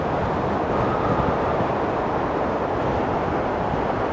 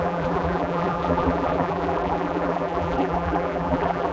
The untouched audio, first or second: first